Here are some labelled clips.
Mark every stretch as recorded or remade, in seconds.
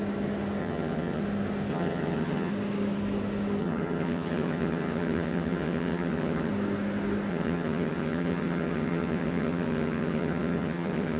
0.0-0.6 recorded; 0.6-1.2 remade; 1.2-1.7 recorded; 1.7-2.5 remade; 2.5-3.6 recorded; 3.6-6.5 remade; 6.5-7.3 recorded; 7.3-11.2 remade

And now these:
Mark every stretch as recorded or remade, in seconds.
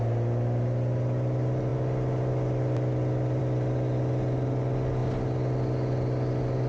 0.0-6.7 recorded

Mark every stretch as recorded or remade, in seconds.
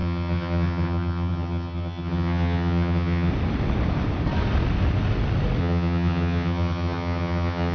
0.0-3.3 remade; 3.3-5.6 recorded; 5.6-7.7 remade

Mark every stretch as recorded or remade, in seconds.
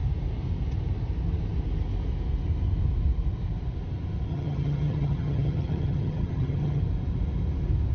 0.0-4.3 recorded; 4.3-6.8 remade; 6.8-7.9 recorded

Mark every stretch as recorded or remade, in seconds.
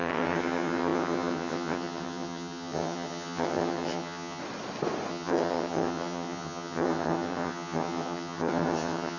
0.0-4.4 remade; 4.4-5.1 recorded; 5.1-9.2 remade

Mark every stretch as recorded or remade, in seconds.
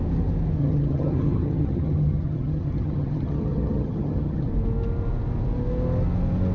0.0-0.6 recorded; 0.6-4.5 remade; 4.5-6.5 recorded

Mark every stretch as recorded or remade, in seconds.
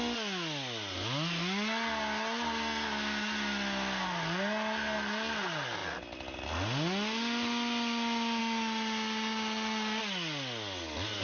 0.0-11.2 recorded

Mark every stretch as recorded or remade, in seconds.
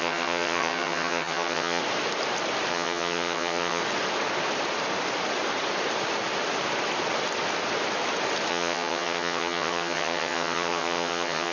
0.0-1.8 remade; 1.8-2.7 recorded; 2.7-3.8 remade; 3.8-8.5 recorded; 8.5-11.5 remade